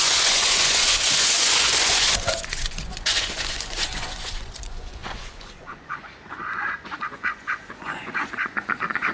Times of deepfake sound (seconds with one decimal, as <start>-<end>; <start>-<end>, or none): 0.0-9.1